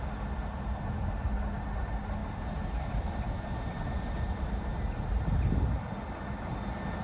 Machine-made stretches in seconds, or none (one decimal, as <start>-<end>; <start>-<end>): none